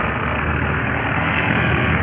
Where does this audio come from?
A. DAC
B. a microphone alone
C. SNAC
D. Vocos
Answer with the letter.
C